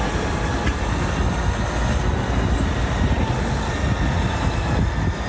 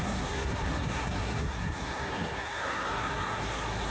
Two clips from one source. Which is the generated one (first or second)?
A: second